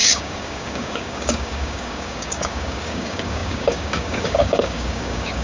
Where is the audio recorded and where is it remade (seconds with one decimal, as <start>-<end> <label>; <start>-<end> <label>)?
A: 0.0-5.4 remade